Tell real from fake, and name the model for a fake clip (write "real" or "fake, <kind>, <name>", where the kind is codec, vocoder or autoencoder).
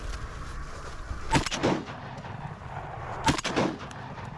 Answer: real